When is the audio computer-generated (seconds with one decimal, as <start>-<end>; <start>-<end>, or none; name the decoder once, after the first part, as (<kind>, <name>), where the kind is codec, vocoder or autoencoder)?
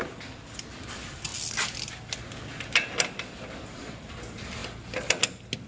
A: 0.0-1.3 (vocoder, BigVGAN v2); 2.4-4.6